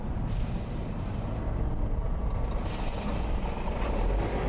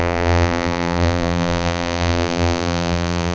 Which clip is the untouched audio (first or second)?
first